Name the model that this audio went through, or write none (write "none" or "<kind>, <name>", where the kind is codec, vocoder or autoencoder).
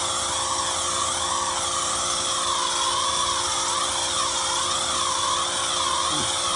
none